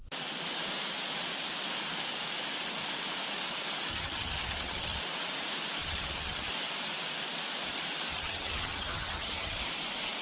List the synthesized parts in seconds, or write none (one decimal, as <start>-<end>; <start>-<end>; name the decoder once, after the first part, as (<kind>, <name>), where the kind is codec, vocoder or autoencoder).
3.9-5.0 (vocoder, HiFi-GAN); 5.8-6.5; 8.1-9.6